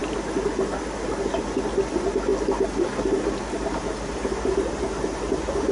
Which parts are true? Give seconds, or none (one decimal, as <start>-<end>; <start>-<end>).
0.0-5.7